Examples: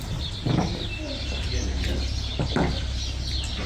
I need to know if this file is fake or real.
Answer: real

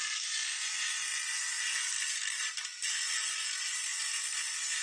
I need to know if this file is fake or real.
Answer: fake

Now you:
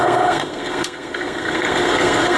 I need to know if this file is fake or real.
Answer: fake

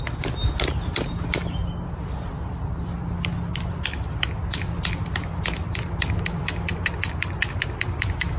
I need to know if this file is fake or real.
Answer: real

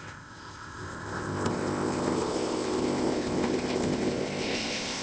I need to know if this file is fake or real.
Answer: fake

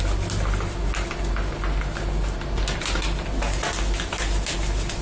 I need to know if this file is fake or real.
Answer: real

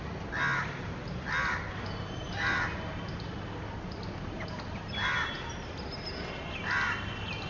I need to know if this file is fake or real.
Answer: real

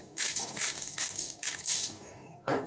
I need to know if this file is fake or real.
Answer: fake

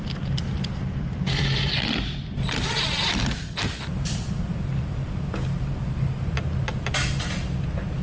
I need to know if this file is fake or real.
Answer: real